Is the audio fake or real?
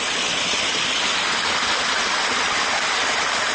real